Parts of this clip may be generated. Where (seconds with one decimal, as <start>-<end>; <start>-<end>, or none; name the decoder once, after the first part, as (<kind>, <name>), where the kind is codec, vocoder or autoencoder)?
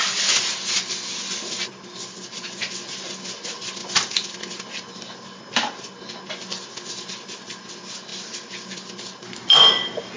none